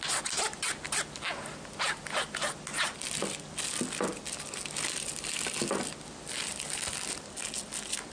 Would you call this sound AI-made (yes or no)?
no